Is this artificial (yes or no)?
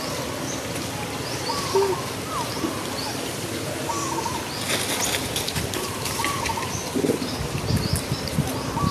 no